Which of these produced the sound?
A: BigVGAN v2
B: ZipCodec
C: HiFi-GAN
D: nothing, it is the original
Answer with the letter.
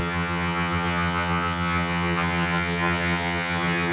C